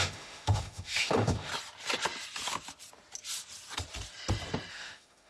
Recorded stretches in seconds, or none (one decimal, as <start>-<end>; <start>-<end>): 1.5-4.7

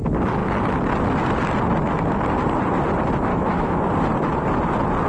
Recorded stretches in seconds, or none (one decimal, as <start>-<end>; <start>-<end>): 0.0-3.3; 3.8-5.1

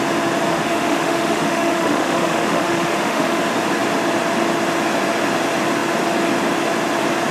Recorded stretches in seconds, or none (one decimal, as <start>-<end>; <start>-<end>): 0.0-0.5; 3.4-7.3